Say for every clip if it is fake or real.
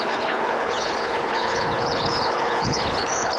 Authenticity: fake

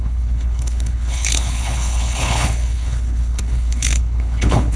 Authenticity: fake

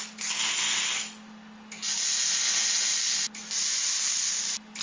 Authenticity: real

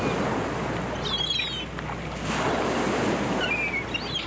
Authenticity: real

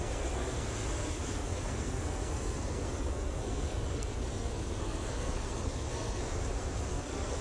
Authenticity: fake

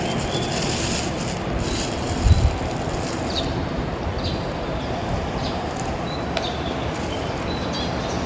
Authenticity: fake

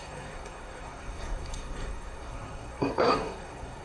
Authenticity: fake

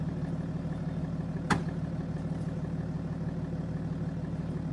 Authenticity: real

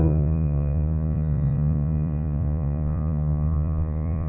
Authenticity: fake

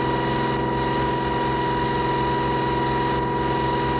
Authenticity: real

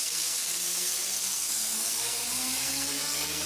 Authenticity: fake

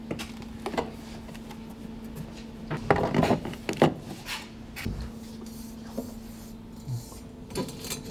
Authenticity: real